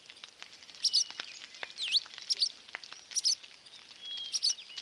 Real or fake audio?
real